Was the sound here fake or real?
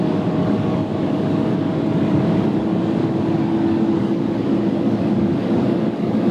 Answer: fake